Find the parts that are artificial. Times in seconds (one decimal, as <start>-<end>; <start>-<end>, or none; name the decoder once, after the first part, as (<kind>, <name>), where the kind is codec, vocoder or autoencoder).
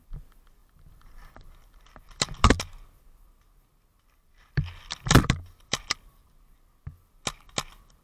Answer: 0.6-2.6 (vocoder, BigVGAN v2); 3.9-6.2